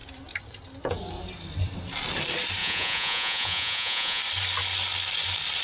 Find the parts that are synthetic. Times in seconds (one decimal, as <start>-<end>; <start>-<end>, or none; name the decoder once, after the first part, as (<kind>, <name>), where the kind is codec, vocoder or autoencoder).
2.6-4.2 (vocoder, Vocos)

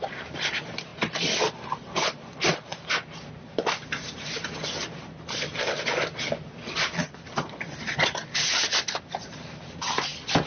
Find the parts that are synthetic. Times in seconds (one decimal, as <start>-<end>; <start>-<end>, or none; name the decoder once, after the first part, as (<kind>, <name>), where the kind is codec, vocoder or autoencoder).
none

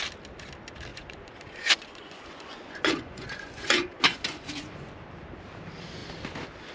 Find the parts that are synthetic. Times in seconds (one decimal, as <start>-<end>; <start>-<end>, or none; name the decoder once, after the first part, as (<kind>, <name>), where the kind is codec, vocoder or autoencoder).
0.9-4.9 (vocoder, Vocos)

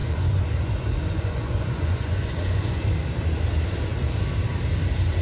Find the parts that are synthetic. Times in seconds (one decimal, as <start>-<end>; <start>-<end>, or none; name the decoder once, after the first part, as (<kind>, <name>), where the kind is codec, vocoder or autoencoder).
0.0-2.8 (vocoder, Vocos)

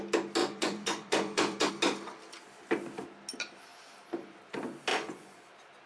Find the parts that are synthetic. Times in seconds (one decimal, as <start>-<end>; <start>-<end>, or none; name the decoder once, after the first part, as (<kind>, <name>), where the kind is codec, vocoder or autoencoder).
0.4-1.7 (vocoder, Vocos); 4.9-5.5